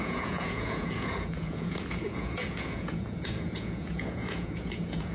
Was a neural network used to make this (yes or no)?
yes